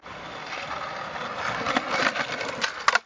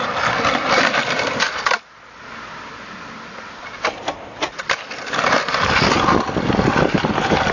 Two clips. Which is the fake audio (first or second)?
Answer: second